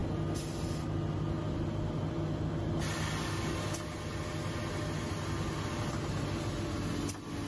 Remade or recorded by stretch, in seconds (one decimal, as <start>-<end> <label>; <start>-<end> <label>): 0.0-7.5 recorded